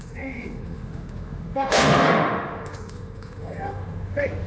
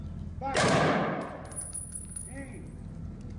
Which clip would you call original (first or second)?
second